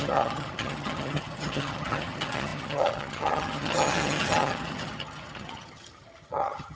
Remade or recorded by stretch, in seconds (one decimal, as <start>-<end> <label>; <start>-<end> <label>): 0.0-6.8 remade